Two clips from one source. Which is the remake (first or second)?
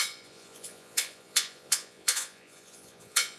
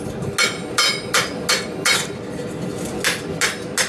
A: first